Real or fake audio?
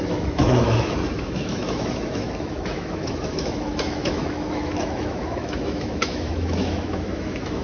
fake